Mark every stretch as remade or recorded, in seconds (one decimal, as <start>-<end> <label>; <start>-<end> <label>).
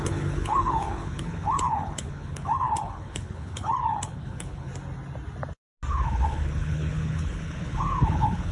0.0-4.7 remade; 4.7-5.9 recorded; 5.9-8.5 remade